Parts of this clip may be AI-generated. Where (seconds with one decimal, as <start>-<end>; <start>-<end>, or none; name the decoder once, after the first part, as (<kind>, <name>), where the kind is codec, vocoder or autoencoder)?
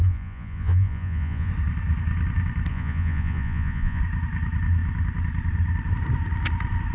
0.0-1.5 (vocoder, Vocos); 2.7-4.0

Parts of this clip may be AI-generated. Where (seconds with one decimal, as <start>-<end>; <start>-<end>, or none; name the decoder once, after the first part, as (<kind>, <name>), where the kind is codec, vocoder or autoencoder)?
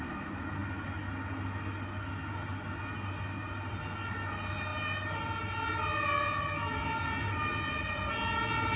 none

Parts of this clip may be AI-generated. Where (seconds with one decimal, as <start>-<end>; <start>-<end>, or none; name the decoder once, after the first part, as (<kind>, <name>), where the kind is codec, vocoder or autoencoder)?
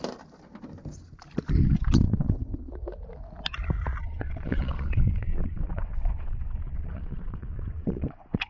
1.6-2.7 (vocoder, WaveNeXt); 4.0-8.5